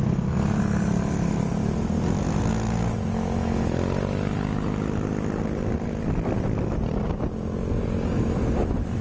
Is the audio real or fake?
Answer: real